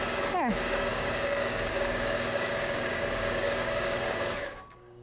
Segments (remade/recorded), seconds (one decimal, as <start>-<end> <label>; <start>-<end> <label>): 0.0-5.0 remade